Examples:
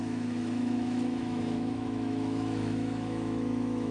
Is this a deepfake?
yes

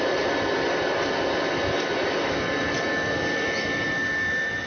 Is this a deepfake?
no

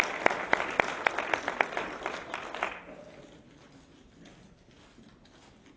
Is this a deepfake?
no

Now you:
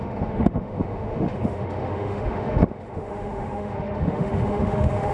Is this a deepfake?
yes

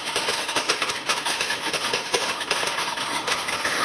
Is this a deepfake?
yes